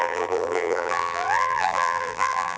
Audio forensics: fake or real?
fake